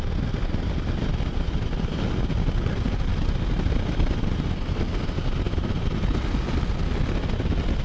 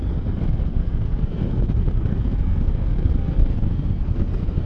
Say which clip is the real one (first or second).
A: first